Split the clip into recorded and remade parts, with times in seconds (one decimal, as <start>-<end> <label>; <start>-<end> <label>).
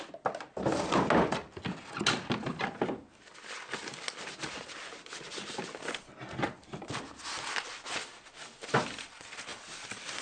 0.0-9.5 recorded; 9.5-10.2 remade